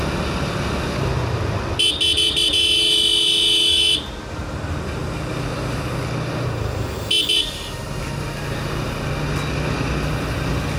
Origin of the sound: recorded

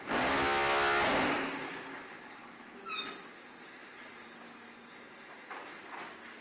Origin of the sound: recorded